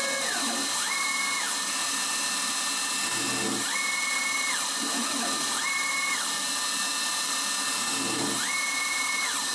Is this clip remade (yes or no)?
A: no